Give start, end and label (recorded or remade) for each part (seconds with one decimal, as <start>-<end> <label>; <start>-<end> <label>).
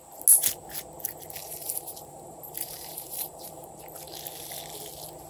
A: 0.0-1.4 recorded; 1.4-3.8 remade; 3.8-5.3 recorded